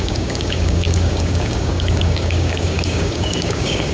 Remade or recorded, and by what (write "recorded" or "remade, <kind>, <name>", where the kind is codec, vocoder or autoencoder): remade, codec, DAC